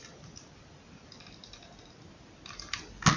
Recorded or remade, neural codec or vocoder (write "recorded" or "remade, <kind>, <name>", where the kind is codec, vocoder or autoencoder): recorded